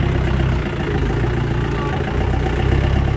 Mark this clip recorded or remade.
recorded